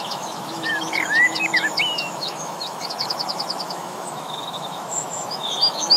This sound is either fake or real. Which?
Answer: fake